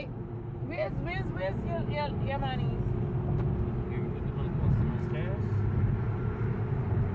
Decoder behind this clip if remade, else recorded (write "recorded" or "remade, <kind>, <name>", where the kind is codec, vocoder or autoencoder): recorded